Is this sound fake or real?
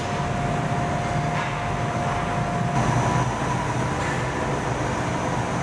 real